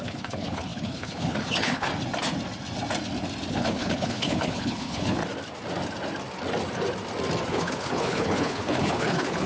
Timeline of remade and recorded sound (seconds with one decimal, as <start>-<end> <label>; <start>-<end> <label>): 0.0-1.9 remade; 1.9-3.5 recorded; 3.5-5.2 remade; 5.2-7.5 recorded; 7.5-9.5 remade